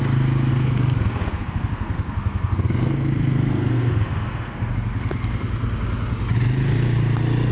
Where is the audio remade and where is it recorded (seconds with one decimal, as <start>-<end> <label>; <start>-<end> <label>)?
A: 0.0-0.5 recorded; 0.5-4.7 remade; 4.7-7.5 recorded